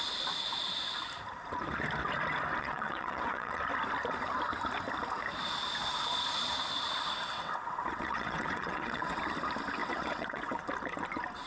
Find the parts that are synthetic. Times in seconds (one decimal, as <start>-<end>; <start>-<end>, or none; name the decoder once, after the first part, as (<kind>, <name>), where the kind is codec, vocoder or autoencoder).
2.6-3.6 (vocoder, WaveNeXt); 7.3-9.2; 9.8-10.6